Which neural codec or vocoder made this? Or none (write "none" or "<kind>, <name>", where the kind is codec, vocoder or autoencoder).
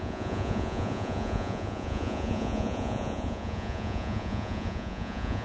vocoder, Vocos